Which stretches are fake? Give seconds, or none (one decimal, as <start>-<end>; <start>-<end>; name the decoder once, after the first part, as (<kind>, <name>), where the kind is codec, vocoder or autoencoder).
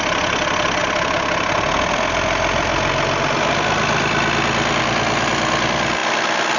none